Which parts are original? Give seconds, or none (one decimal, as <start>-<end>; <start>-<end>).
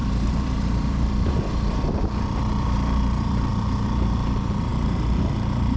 none